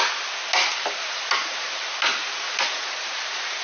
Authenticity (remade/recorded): recorded